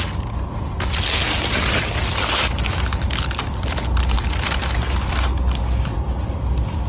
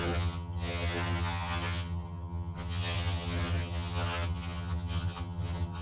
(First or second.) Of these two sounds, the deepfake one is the second